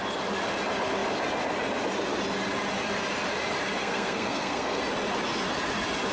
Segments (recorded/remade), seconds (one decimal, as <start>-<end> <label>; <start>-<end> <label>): 0.0-3.8 recorded; 3.8-4.8 remade; 4.8-6.1 recorded